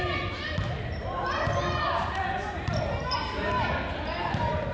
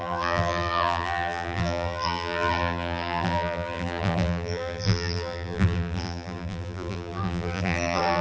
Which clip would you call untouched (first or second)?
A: first